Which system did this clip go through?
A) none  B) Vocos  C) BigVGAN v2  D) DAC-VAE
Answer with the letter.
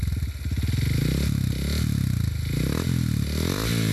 A